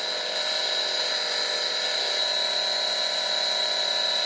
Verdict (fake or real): fake